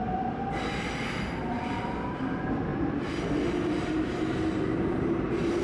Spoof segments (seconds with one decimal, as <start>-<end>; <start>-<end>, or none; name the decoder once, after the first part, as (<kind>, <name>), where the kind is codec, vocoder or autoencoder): 2.7-3.2 (vocoder, BigVGAN v2)

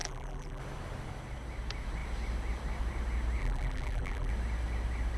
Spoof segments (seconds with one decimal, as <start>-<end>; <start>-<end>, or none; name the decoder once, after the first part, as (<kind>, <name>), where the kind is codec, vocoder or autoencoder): 0.0-0.6 (vocoder, BigVGAN v2); 3.4-4.3